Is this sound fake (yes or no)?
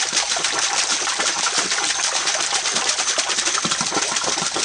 no